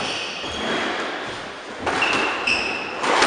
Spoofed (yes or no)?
no